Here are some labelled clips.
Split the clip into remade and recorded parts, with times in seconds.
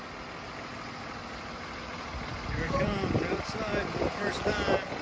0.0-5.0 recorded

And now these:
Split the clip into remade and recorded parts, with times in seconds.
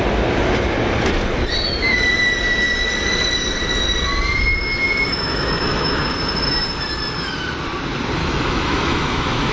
0.0-4.8 recorded; 4.8-6.1 remade; 6.1-8.2 recorded; 8.2-9.5 remade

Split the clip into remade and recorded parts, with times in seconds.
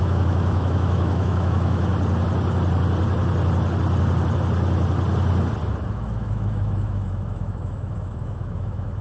0.0-1.9 remade; 1.9-5.9 recorded; 5.9-9.0 remade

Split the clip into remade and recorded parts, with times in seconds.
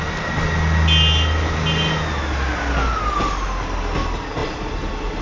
0.0-5.2 recorded